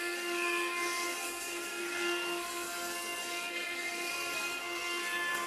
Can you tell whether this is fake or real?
fake